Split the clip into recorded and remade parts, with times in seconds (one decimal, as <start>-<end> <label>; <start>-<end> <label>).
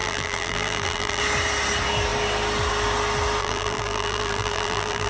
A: 0.0-1.2 remade; 1.2-3.4 recorded; 3.4-5.1 remade